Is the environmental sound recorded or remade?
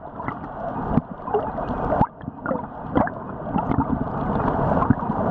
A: recorded